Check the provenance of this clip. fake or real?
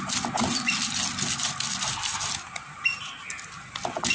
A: real